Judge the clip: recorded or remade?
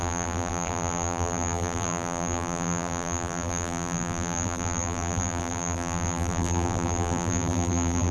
remade